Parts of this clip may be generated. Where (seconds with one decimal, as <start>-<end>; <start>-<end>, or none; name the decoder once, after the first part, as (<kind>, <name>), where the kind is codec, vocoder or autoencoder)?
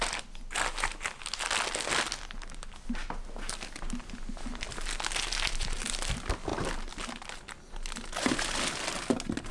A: none